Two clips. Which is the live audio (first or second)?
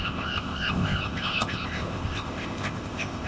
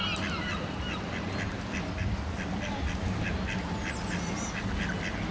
second